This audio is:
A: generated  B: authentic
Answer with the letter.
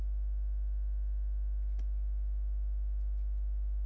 B